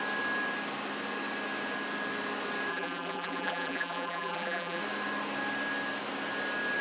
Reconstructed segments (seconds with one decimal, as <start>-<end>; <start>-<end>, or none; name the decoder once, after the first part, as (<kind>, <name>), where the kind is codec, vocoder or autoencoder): 2.7-4.8 (vocoder, BigVGAN v2)